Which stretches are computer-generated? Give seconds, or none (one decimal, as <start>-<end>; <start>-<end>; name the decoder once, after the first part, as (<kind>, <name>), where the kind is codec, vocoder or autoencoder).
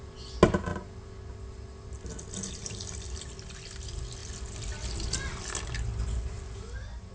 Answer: 2.6-3.3 (vocoder, BigVGAN v2)